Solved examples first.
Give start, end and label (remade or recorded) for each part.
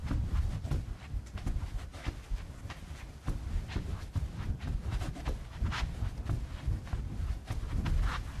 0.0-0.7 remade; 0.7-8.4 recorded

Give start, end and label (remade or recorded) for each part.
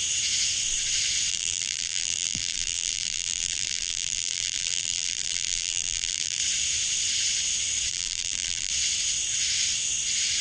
0.0-1.3 recorded; 1.3-6.4 remade; 6.4-7.9 recorded; 7.9-8.7 remade; 8.7-10.4 recorded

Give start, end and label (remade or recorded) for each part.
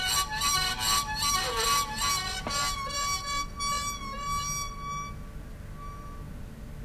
0.0-6.8 recorded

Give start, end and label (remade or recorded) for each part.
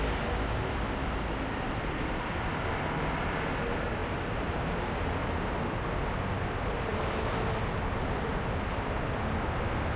0.0-4.0 recorded; 4.0-5.7 remade; 5.7-10.0 recorded